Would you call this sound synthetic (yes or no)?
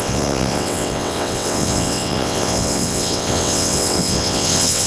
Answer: yes